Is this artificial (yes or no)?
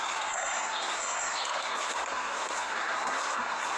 yes